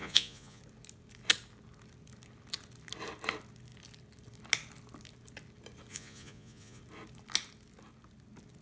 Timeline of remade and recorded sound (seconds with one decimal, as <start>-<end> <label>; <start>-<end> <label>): 0.0-0.6 remade; 0.6-5.9 recorded; 5.9-6.8 remade; 6.8-8.6 recorded